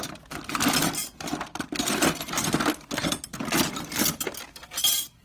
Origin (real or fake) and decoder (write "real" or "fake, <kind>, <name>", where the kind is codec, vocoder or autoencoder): real